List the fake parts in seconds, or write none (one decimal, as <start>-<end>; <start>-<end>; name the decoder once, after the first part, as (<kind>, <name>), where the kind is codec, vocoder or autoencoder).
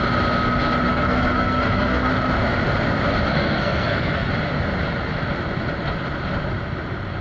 0.9-2.1 (codec, SNAC); 3.3-4.3